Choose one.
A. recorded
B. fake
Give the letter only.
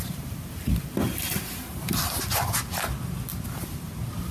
A